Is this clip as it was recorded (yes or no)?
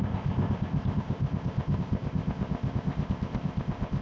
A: no